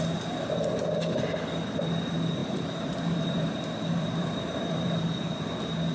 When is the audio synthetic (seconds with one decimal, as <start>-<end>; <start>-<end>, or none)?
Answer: 2.4-4.9